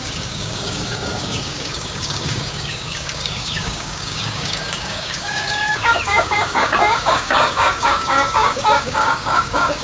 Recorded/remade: remade